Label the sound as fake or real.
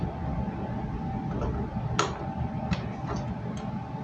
real